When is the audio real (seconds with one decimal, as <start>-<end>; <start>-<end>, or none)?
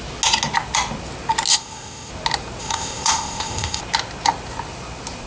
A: 0.0-1.5; 2.1-2.6; 3.8-5.3